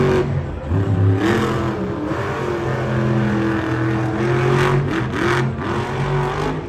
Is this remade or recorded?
recorded